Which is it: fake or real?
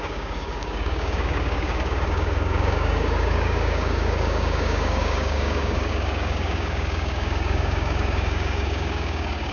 fake